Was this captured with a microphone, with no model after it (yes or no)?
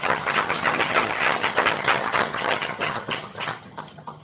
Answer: no